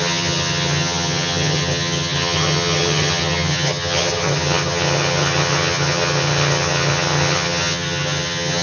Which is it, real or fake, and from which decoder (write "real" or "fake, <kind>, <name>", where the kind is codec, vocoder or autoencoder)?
fake, vocoder, HiFi-GAN